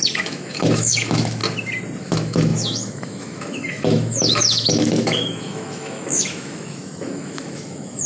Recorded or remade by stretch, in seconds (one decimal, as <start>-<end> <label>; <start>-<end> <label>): 0.0-1.4 remade; 1.4-2.0 recorded; 2.0-8.1 remade